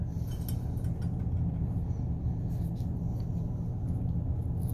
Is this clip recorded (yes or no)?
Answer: yes